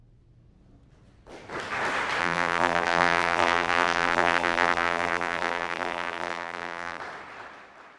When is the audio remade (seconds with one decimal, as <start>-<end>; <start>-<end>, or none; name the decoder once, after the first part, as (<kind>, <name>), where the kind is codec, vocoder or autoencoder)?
2.2-7.0 (vocoder, BigVGAN v2)